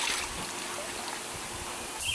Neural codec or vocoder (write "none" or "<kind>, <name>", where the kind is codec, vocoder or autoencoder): none